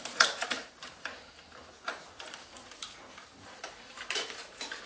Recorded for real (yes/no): no